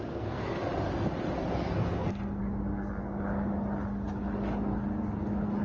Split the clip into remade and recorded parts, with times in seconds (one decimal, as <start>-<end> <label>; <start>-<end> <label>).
0.0-0.6 remade; 0.6-1.8 recorded; 1.8-2.4 remade; 2.4-5.6 recorded